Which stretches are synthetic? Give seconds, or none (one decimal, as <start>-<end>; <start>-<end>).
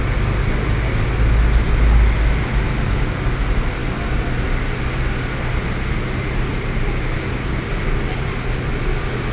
none